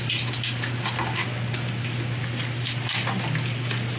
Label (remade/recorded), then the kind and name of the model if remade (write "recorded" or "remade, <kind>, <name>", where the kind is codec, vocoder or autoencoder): recorded